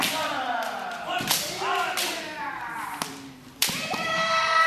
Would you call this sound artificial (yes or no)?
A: no